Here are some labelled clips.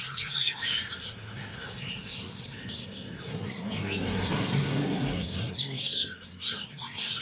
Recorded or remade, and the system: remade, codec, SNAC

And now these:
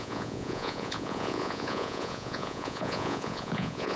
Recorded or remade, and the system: remade, vocoder, Vocos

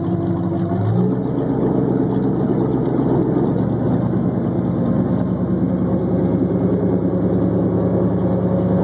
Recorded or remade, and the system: recorded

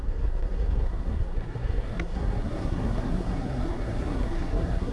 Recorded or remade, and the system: remade, codec, SNAC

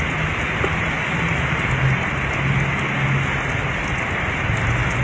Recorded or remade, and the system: recorded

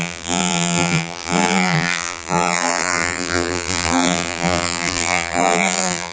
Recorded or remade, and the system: remade, vocoder, BigVGAN v2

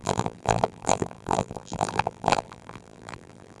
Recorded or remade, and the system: remade, vocoder, BigVGAN v2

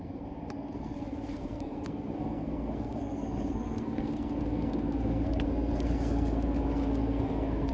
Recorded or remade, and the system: remade, codec, SNAC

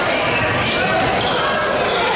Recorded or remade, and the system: recorded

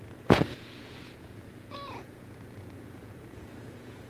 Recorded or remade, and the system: remade, vocoder, Vocos